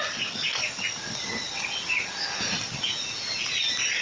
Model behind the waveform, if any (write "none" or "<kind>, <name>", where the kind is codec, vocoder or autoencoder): none